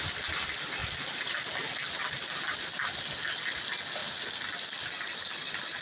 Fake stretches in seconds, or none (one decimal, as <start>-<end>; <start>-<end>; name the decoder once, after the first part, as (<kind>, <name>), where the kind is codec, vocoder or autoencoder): 0.0-4.0 (vocoder, BigVGAN v2)